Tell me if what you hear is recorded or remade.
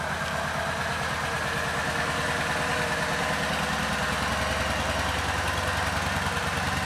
recorded